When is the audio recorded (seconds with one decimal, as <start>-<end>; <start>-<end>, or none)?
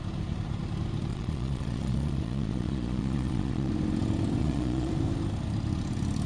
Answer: 0.0-1.1; 3.7-4.4; 4.9-6.3